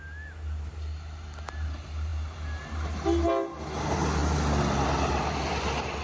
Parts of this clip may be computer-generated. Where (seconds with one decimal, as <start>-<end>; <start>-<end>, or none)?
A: none